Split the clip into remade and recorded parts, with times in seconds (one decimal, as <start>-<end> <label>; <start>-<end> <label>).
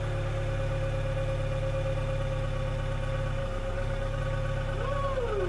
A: 0.0-3.4 recorded; 3.4-4.2 remade; 4.2-5.5 recorded